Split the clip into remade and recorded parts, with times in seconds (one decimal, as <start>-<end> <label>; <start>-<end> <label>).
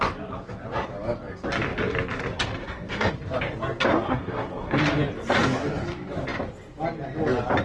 0.0-2.6 recorded; 2.6-3.1 remade; 3.1-3.9 recorded; 3.9-4.8 remade; 4.8-7.6 recorded